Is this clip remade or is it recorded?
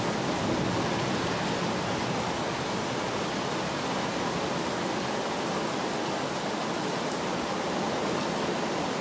recorded